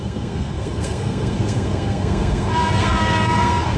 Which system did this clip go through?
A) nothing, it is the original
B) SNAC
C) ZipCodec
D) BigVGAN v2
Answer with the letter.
B